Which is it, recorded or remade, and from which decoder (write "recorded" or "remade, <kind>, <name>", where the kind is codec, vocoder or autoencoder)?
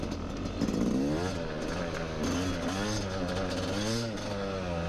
recorded